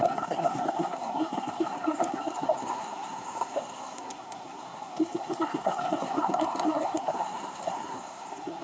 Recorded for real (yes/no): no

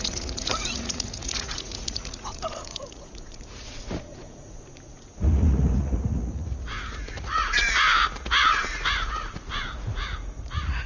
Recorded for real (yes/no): no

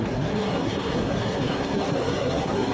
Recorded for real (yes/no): no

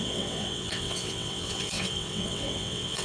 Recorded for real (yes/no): no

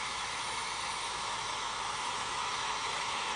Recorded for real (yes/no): no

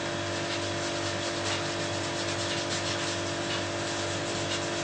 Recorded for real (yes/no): yes